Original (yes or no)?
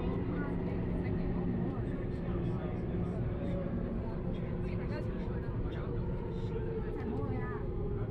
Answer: no